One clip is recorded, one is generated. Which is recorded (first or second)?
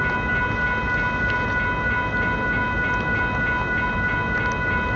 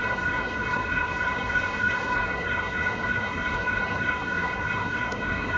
first